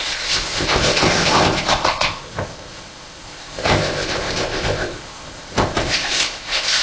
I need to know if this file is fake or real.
fake